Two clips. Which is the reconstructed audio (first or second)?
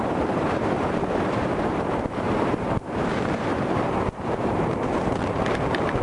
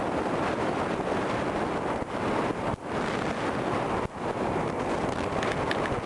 first